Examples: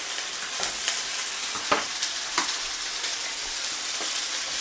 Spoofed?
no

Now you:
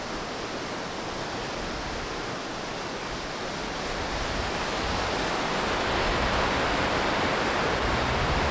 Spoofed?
no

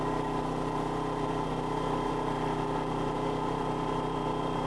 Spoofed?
yes